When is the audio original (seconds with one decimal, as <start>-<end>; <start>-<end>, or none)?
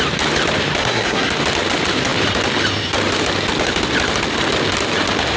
0.0-0.8; 1.3-5.4